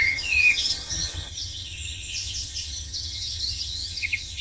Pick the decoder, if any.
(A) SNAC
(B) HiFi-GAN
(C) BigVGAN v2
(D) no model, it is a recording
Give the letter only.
B